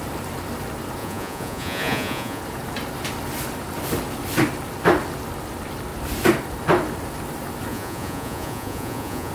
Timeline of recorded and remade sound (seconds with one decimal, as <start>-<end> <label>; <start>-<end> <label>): 0.0-1.0 recorded; 1.0-2.4 remade; 2.4-7.7 recorded; 7.7-9.3 remade